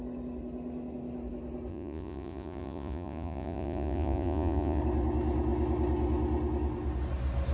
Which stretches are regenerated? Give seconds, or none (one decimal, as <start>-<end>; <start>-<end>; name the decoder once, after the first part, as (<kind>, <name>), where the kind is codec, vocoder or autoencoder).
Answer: 1.7-4.8 (vocoder, Vocos)